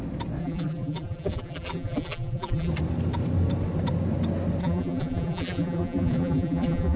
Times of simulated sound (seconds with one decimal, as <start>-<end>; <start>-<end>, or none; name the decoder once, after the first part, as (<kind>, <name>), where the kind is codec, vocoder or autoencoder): 0.4-2.7 (vocoder, BigVGAN v2); 4.6-7.0